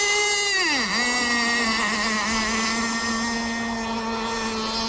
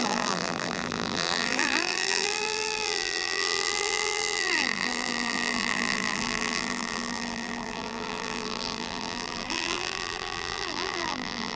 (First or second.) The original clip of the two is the first